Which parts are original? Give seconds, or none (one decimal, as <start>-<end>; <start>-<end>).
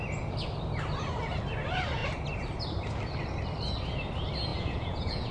0.0-4.5